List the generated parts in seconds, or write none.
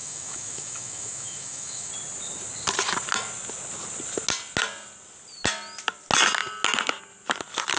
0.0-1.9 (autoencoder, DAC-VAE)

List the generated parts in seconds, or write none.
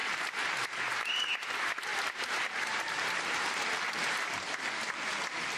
0.0-1.1 (vocoder, BigVGAN v2); 1.9-4.3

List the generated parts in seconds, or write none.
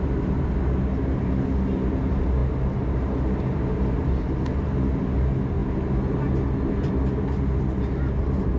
none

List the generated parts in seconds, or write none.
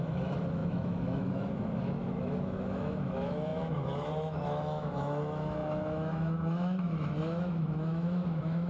0.0-8.7 (autoencoder, DAC-VAE)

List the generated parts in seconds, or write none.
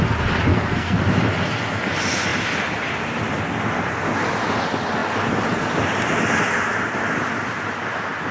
0.5-1.0 (codec, SNAC)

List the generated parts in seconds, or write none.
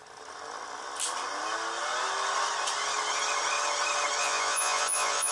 4.2-5.3 (vocoder, Vocos)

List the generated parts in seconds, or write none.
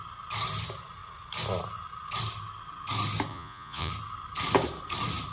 3.3-3.9 (vocoder, Vocos)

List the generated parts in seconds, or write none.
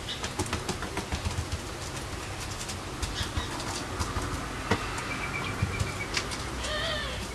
none